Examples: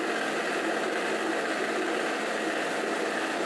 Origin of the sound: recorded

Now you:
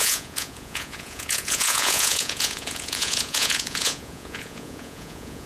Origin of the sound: remade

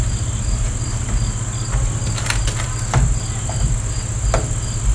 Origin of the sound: recorded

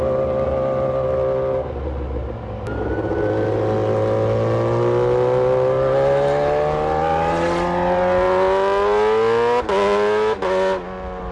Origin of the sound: recorded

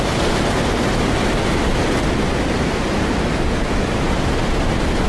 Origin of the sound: recorded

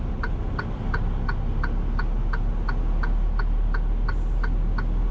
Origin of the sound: recorded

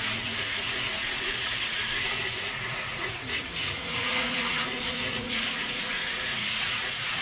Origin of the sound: remade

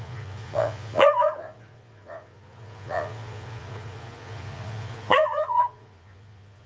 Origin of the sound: remade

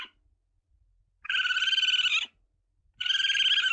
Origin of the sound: recorded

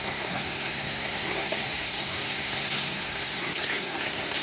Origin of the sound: remade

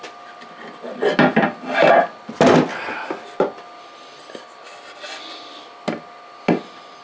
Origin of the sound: recorded